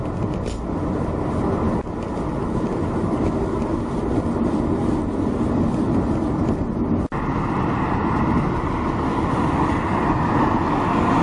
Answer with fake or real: real